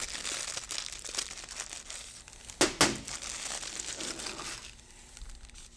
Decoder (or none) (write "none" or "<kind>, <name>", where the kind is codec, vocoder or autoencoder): none